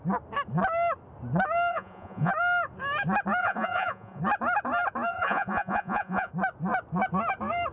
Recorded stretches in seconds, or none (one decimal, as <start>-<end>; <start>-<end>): 0.0-1.7; 2.3-3.4; 4.2-5.1; 6.3-7.7